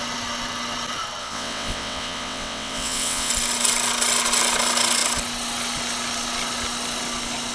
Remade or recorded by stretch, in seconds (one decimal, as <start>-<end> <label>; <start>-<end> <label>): 0.0-1.2 recorded; 1.2-3.3 remade; 3.3-7.5 recorded